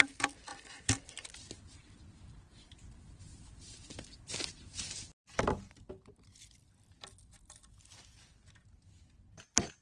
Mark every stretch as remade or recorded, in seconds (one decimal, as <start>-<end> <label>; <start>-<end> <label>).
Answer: 0.0-9.8 recorded